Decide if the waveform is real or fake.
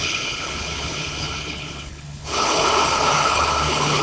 fake